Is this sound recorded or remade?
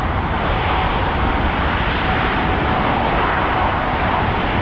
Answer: recorded